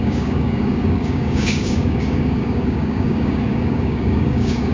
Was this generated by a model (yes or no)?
yes